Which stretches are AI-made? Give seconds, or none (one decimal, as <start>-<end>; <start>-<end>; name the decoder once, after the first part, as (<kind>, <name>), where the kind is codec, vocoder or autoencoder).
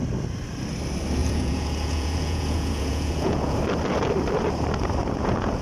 1.2-3.6 (vocoder, Vocos); 5.0-5.6